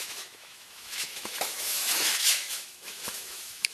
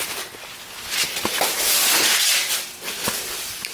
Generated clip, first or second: first